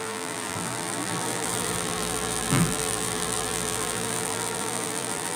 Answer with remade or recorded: remade